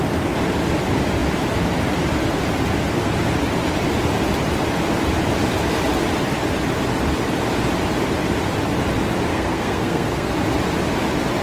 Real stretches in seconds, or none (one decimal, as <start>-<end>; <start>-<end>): 0.0-9.3; 10.3-11.4